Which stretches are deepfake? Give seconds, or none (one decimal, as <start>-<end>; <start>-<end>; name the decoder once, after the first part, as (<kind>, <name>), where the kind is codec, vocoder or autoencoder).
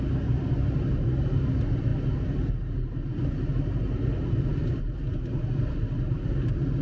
none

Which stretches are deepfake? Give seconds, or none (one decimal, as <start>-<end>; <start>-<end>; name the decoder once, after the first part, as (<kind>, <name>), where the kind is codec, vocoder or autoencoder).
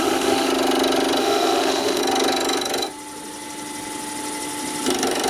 0.0-0.5 (autoencoder, DAC-VAE); 1.2-2.0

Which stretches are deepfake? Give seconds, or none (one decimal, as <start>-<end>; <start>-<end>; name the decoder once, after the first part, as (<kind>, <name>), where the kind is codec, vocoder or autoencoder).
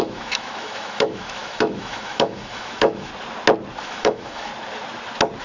0.0-3.1 (autoencoder, DAC-VAE); 3.8-4.5